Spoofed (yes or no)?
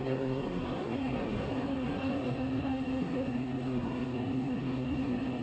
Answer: yes